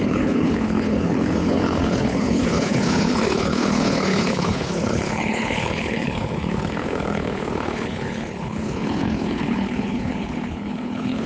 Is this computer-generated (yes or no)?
yes